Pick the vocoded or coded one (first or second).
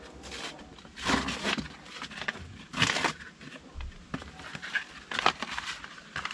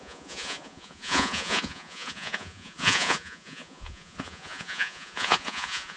second